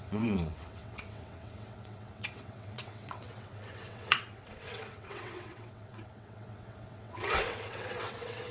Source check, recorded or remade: remade